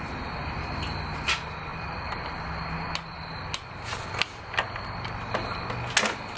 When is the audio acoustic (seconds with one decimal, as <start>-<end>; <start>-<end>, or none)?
0.0-1.7; 2.4-6.4

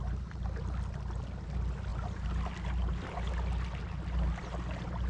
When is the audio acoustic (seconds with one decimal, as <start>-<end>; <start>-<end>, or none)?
0.0-5.1

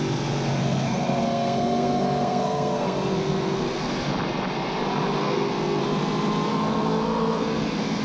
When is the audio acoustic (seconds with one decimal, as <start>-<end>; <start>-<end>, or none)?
0.0-0.6; 3.9-5.2; 5.8-6.5